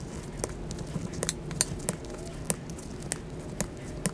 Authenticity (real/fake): real